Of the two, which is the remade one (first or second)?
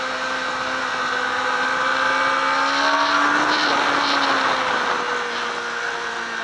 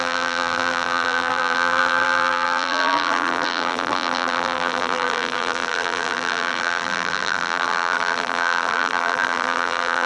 second